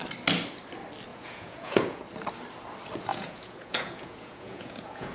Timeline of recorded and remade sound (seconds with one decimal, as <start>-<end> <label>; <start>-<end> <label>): 0.0-1.1 recorded; 1.1-2.0 remade; 2.0-3.1 recorded; 3.1-5.1 remade